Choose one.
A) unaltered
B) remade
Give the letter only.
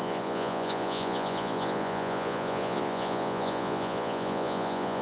B